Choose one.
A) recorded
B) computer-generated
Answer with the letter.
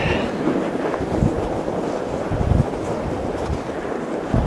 A